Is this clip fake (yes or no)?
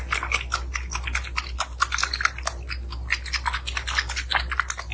no